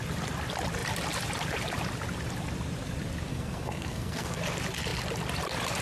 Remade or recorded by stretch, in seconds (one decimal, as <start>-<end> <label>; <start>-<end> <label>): 0.0-3.3 recorded; 3.3-4.4 remade; 4.4-5.8 recorded